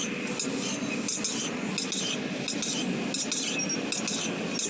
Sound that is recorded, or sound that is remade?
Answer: recorded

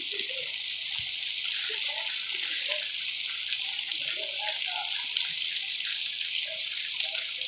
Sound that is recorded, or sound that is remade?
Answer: recorded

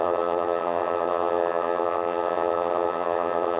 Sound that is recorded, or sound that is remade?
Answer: remade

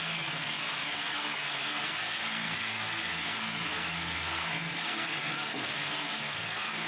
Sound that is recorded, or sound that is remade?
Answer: remade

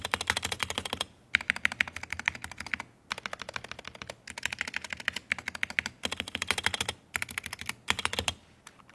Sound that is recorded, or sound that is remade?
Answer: recorded